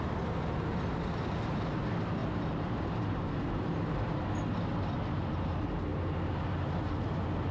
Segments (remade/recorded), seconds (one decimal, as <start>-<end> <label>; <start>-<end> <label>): 0.0-2.2 recorded; 2.2-4.3 remade; 4.3-7.5 recorded

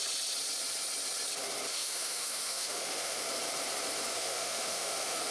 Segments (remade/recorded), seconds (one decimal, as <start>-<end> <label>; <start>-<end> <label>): 0.0-1.7 recorded; 1.7-3.2 remade; 3.2-4.1 recorded; 4.1-5.3 remade

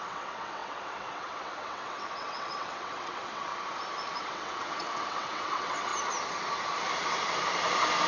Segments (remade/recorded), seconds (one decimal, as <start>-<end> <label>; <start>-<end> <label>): 0.0-3.5 remade; 3.5-4.2 recorded; 4.2-5.9 remade; 5.9-8.1 recorded

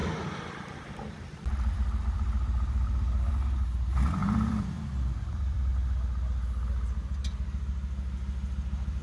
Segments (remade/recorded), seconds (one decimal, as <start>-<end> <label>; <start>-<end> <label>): 0.0-3.3 remade; 3.3-4.2 recorded; 4.2-5.7 remade; 5.7-9.0 recorded